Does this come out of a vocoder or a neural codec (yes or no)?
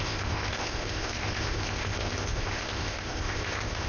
yes